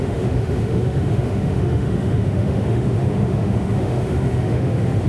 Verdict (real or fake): fake